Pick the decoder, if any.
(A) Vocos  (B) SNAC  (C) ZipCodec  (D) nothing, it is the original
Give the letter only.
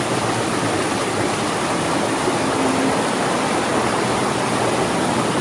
D